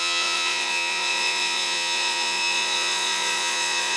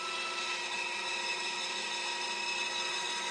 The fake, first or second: first